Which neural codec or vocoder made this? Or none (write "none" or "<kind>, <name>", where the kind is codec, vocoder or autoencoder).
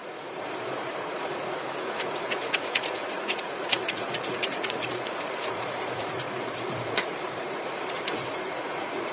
vocoder, Vocos